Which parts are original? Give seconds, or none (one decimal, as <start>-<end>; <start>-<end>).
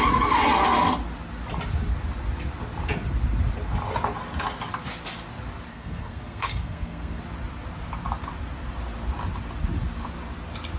0.0-5.7; 7.2-10.8